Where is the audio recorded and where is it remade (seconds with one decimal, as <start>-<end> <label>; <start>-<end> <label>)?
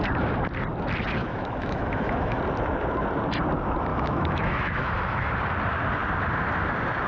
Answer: 0.0-1.2 recorded; 1.2-2.4 remade; 2.4-3.9 recorded; 3.9-5.3 remade; 5.3-7.1 recorded